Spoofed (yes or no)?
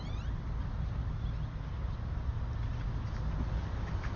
no